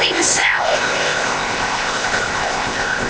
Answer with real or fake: fake